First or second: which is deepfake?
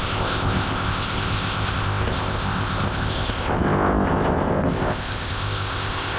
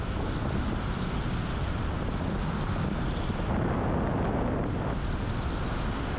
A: first